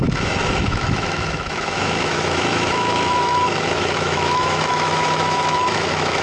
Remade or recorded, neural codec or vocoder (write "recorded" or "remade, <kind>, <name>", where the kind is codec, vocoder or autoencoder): remade, autoencoder, DAC-VAE